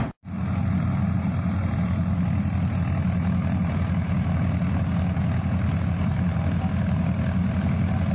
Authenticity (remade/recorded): recorded